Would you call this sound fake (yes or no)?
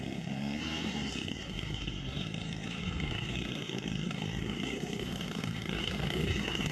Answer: yes